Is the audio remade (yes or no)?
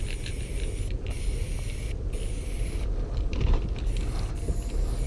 no